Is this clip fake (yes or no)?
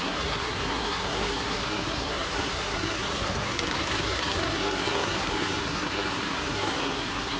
yes